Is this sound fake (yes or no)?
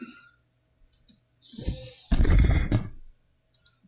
no